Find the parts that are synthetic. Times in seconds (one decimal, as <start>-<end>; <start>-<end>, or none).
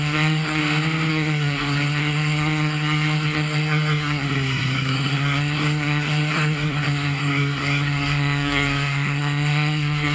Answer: 0.0-0.6; 1.1-10.1